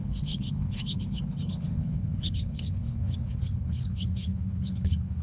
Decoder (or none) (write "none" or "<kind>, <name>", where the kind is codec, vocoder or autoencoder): codec, HILCodec